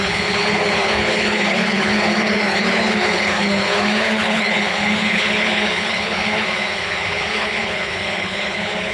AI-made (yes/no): yes